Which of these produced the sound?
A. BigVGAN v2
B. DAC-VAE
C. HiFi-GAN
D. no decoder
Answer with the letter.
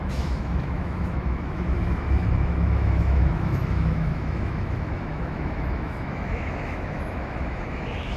B